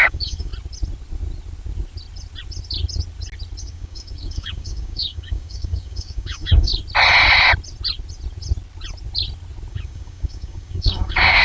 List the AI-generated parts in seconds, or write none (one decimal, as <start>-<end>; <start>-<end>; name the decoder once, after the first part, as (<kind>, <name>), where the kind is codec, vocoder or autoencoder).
0.0-0.5 (codec, DAC); 3.6-6.7; 9.7-11.4